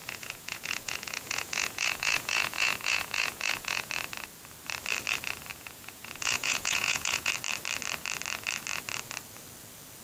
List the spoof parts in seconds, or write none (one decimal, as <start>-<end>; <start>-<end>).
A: 0.0-3.9; 5.5-7.3